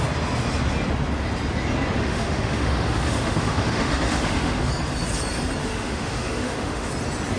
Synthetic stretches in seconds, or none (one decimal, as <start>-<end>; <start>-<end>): 2.0-4.7; 5.6-6.9